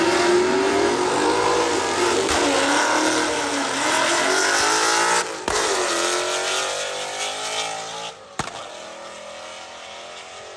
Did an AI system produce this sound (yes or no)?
no